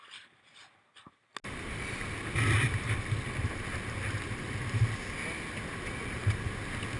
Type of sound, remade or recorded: recorded